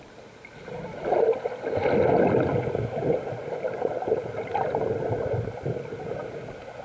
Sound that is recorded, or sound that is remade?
recorded